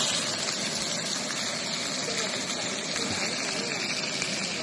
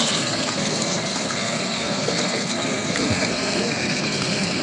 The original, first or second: first